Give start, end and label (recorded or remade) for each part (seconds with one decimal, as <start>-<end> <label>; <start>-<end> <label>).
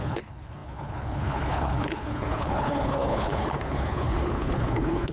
0.0-5.1 remade